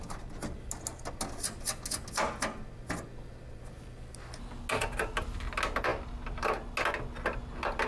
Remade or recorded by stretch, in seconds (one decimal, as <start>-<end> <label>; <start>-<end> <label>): 0.0-7.9 recorded